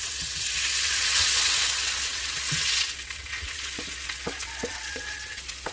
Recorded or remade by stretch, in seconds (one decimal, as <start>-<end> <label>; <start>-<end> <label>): 0.0-5.7 remade